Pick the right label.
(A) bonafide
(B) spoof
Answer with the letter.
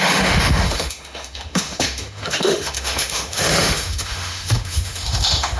B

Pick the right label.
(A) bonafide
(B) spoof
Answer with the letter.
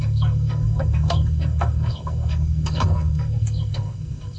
B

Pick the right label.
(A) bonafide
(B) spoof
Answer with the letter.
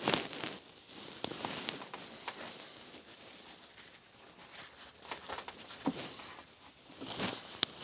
A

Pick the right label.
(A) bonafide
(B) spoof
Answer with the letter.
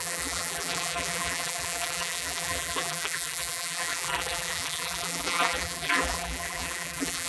B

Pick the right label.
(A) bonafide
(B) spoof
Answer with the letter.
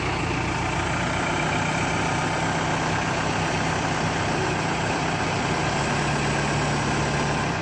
A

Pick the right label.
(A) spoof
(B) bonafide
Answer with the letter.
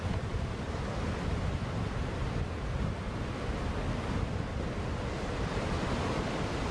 B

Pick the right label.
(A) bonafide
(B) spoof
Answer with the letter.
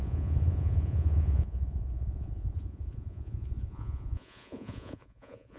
B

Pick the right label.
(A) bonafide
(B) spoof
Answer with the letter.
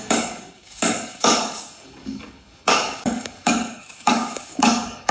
B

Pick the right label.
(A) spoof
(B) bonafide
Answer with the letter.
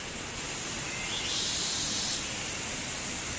B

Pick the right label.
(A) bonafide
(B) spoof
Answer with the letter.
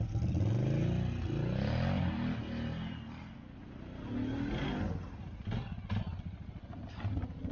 A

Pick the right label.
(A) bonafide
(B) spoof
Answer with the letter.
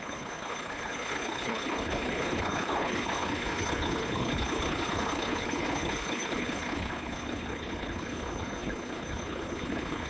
B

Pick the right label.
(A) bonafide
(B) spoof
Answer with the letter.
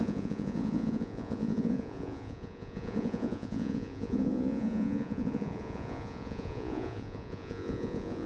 B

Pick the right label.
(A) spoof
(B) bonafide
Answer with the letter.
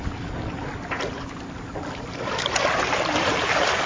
B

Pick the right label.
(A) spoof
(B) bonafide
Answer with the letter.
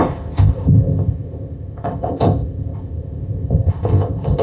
A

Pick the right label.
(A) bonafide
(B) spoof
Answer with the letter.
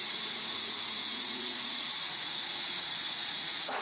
B